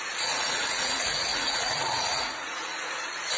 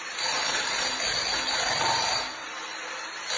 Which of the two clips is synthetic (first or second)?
first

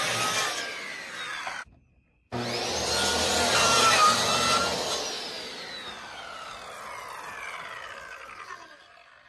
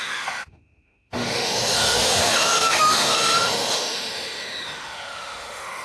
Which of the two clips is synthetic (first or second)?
second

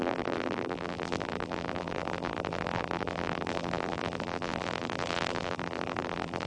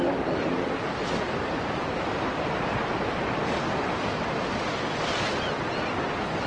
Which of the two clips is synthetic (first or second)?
first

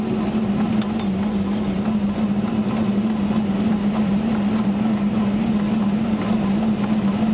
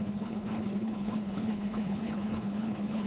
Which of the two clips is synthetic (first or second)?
second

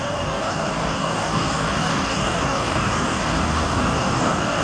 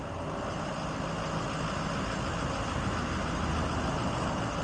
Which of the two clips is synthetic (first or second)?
first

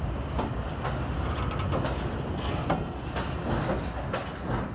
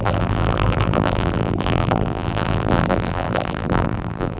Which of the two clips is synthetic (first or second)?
second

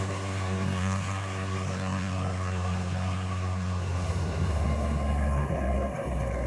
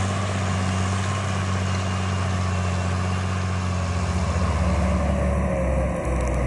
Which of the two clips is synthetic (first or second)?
first